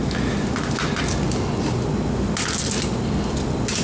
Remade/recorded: recorded